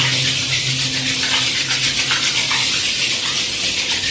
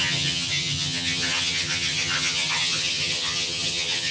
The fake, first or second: second